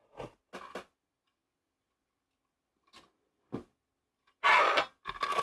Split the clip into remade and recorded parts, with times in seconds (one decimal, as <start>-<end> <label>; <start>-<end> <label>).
0.0-5.4 recorded